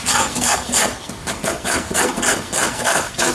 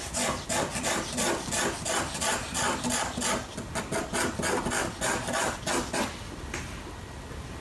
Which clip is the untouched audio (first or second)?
second